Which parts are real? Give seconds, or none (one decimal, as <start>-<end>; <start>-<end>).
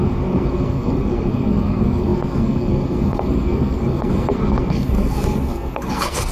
none